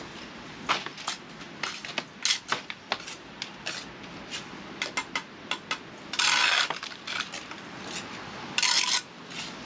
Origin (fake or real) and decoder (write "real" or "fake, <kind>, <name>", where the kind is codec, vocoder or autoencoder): real